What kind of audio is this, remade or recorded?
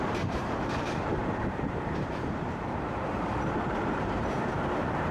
remade